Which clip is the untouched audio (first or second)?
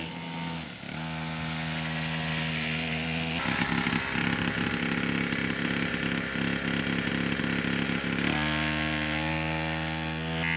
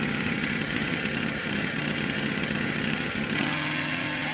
first